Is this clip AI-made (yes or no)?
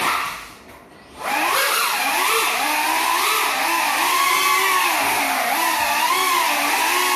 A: no